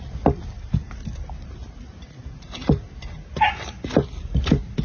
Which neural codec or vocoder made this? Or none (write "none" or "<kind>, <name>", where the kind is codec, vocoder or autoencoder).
none